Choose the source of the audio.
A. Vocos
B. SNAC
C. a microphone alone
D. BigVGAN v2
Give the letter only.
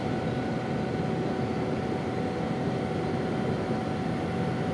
C